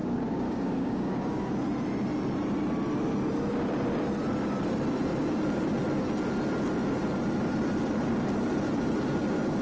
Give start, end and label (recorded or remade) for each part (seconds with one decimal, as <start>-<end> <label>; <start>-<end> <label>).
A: 0.0-1.5 remade; 1.5-9.6 recorded